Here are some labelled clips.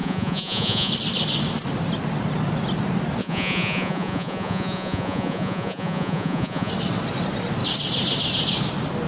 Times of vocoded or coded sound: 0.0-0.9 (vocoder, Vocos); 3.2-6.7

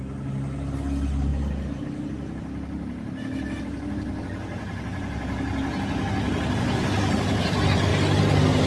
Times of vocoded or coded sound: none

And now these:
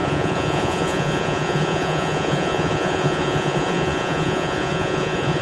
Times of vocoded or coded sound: 0.0-5.4 (vocoder, Vocos)